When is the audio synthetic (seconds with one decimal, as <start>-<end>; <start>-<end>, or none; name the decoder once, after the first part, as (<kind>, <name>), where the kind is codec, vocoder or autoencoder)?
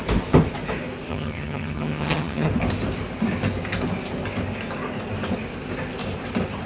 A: 1.1-2.5 (vocoder, HiFi-GAN)